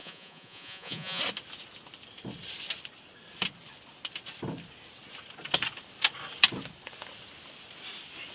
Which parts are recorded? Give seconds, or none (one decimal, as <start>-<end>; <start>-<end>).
1.2-8.3